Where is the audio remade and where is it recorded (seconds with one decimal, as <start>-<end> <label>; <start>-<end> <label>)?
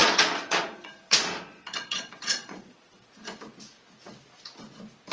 0.0-3.1 remade; 3.1-5.1 recorded